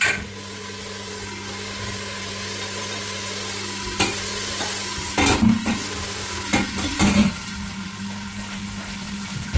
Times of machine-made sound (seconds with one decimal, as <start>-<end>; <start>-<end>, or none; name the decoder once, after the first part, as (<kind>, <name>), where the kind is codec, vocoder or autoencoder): none